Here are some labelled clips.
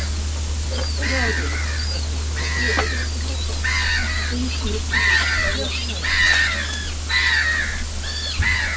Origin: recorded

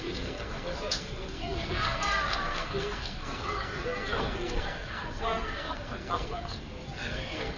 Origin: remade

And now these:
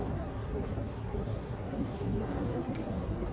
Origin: remade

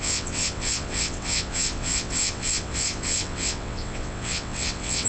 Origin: remade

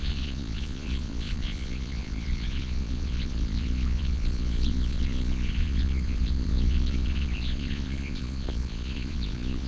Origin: remade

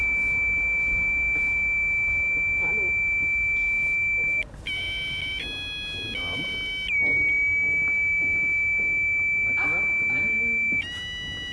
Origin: recorded